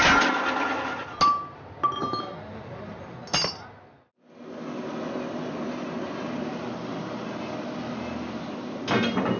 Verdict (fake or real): real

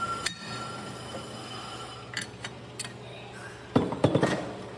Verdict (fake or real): real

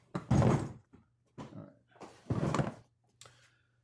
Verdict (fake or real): real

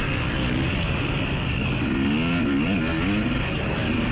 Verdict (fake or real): real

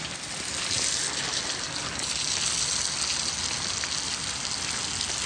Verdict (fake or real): real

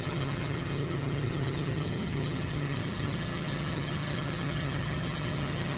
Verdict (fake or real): fake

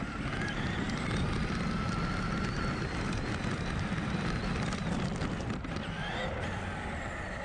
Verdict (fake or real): real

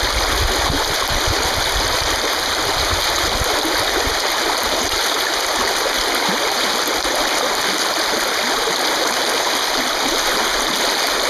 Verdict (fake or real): real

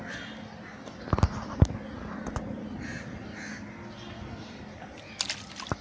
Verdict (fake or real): real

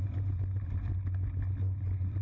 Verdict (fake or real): real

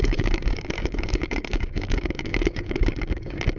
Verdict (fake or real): fake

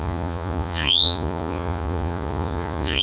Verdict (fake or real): fake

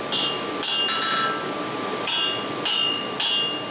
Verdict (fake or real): real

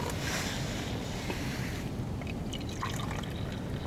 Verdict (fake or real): real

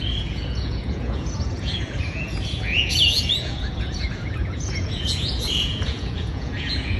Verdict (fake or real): fake